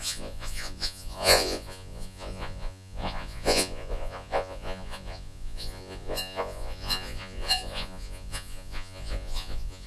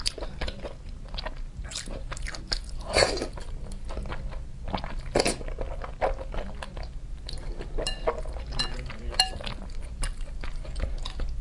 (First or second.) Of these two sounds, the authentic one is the second